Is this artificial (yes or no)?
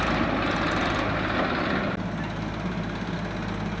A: no